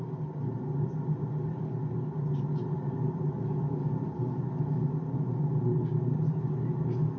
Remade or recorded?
recorded